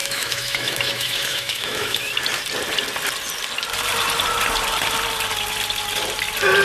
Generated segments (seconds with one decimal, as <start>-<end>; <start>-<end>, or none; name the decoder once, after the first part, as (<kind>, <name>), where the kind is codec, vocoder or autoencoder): 0.0-2.1 (autoencoder, DAC-VAE)